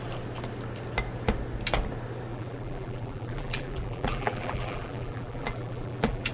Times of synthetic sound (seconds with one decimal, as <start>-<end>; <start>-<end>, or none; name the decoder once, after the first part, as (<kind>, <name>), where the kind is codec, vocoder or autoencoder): 2.3-6.3 (vocoder, BigVGAN v2)